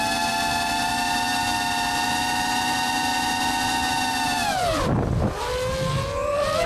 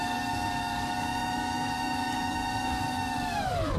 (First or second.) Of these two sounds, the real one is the first